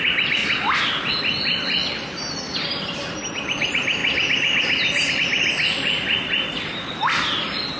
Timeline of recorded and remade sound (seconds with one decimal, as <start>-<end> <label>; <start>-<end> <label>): 0.0-0.4 remade; 0.4-1.2 recorded; 1.2-4.0 remade; 4.0-5.1 recorded; 5.1-7.8 remade